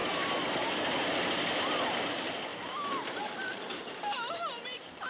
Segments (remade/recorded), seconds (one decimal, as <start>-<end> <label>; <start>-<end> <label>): 0.0-2.5 recorded; 2.5-5.1 remade